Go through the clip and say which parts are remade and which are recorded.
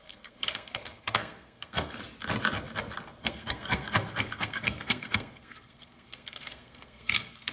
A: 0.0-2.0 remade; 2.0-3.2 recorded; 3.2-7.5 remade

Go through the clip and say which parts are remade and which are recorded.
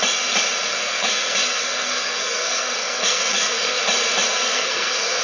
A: 0.0-0.7 recorded; 0.7-3.8 remade; 3.8-4.3 recorded; 4.3-5.2 remade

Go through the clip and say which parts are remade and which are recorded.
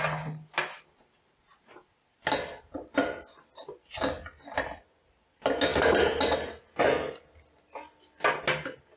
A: 0.0-9.0 recorded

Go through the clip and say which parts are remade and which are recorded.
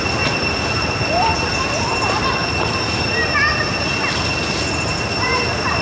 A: 0.0-5.8 recorded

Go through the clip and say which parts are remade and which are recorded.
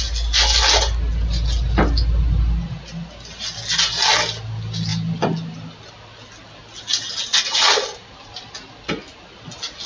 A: 0.0-9.9 recorded